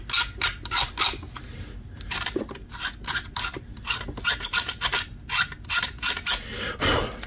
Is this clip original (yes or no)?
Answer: yes